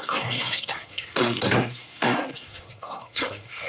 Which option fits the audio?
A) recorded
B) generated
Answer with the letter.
B